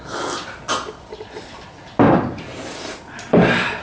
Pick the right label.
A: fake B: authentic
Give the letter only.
B